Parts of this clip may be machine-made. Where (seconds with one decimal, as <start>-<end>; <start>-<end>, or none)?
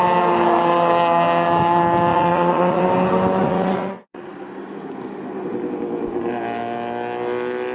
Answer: 2.1-2.8; 3.4-4.3